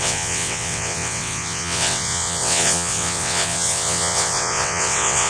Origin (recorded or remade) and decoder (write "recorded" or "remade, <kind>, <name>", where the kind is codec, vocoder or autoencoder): remade, vocoder, WaveNeXt